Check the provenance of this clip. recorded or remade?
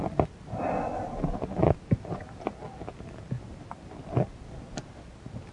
recorded